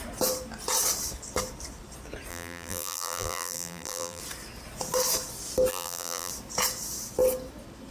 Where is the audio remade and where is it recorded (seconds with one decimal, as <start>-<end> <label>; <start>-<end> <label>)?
0.0-2.3 recorded; 2.3-4.2 remade; 4.2-5.7 recorded; 5.7-6.3 remade; 6.3-7.9 recorded